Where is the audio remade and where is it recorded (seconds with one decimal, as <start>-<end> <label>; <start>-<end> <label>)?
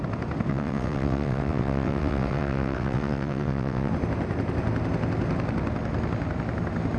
0.0-0.5 recorded; 0.5-3.9 remade; 3.9-7.0 recorded